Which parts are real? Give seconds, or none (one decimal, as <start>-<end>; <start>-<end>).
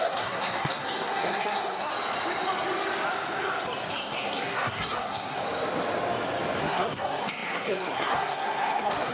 1.9-3.9; 5.4-6.6